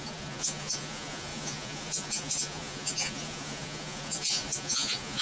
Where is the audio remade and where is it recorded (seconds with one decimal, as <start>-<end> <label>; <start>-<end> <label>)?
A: 0.0-5.2 remade